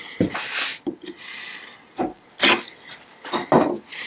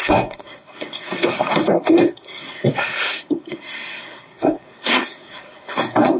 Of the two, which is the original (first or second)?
first